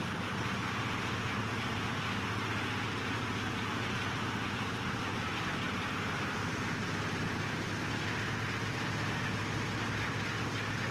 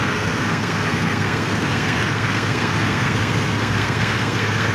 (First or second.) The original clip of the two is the first